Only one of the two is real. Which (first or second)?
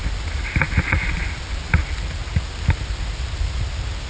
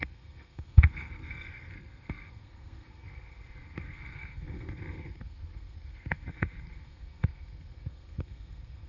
first